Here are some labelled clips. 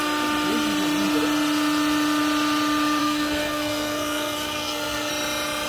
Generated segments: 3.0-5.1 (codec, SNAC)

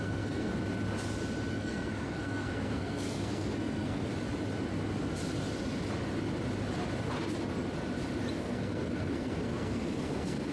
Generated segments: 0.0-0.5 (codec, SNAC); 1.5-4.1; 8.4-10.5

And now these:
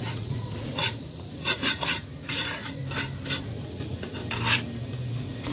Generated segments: 0.0-2.8 (vocoder, Vocos); 3.4-4.2; 5.1-5.5

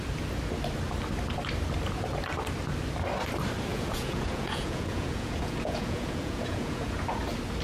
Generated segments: 3.7-7.0 (vocoder, Vocos)

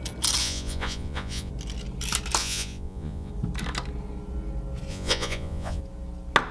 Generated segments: 0.4-1.5 (vocoder, Vocos); 2.4-3.3; 4.9-5.8

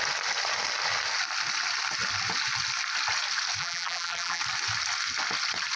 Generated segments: 3.6-4.4 (vocoder, BigVGAN v2)

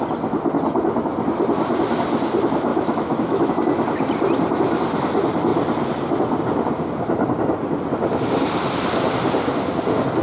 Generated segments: 2.7-3.5 (autoencoder, DAC-VAE)